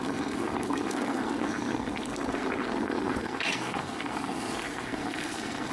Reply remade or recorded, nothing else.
remade